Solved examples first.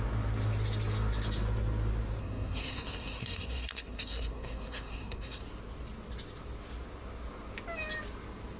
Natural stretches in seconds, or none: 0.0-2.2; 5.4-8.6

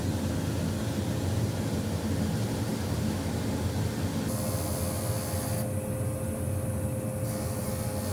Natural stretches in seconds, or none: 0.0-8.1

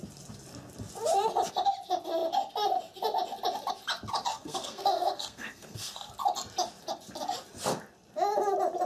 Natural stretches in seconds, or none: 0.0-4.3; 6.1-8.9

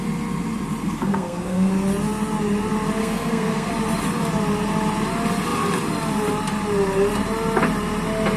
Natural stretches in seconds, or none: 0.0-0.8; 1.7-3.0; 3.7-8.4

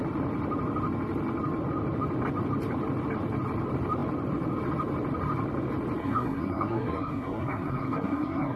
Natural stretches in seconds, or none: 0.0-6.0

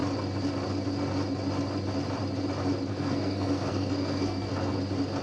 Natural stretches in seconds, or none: 0.0-2.9; 4.7-5.2

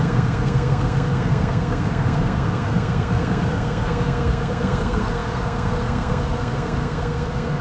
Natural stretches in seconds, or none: none

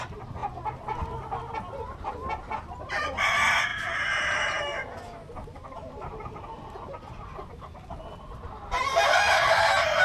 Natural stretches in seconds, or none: 0.0-9.1; 9.6-10.0